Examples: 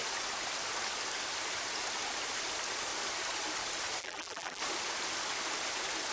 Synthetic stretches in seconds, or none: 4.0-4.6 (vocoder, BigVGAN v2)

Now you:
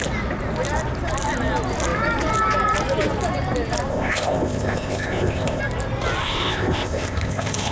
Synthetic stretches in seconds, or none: 3.9-5.6 (codec, ZipCodec); 6.2-7.7

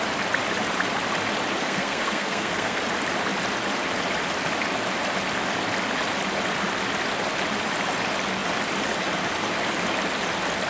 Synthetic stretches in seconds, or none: 1.6-2.8 (codec, SNAC)

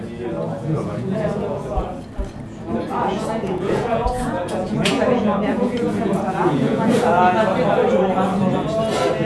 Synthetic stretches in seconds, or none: 0.5-1.9 (vocoder, Vocos); 3.1-6.9

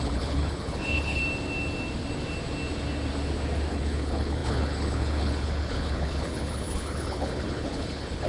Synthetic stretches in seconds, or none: 0.0-1.2 (codec, HILCodec); 3.7-8.3

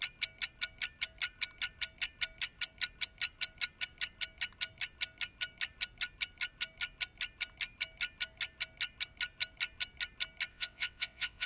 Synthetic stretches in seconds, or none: 10.5-11.5 (vocoder, WaveNeXt)